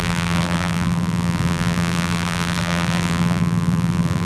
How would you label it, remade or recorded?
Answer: remade